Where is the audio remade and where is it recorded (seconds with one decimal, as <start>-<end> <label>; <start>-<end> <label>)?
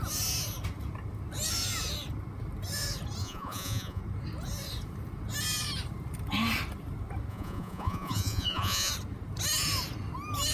0.0-3.2 recorded; 3.2-4.0 remade; 4.0-7.3 recorded; 7.3-8.9 remade; 8.9-10.5 recorded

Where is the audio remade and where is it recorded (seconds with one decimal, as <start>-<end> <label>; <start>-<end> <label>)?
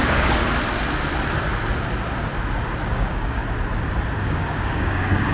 0.0-0.4 remade; 0.4-2.9 recorded; 2.9-3.4 remade; 3.4-4.2 recorded; 4.2-5.3 remade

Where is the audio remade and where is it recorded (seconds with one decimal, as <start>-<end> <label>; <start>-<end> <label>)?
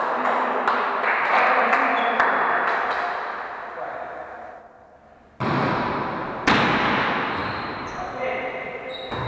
0.0-7.4 recorded; 7.4-8.0 remade; 8.0-9.3 recorded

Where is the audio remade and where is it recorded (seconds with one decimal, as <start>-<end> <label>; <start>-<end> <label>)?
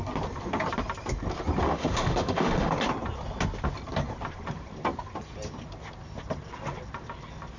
0.0-1.6 recorded; 1.6-2.7 remade; 2.7-7.6 recorded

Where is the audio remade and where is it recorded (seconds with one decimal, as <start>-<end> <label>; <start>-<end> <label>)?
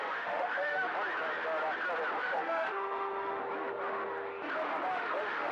0.0-0.9 remade; 0.9-2.2 recorded; 2.2-3.4 remade; 3.4-4.9 recorded; 4.9-5.5 remade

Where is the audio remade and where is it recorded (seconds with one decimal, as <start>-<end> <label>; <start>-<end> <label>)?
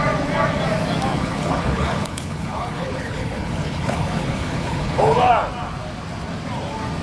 0.0-1.1 recorded; 1.1-5.3 remade; 5.3-7.0 recorded